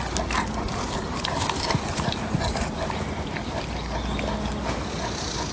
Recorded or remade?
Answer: recorded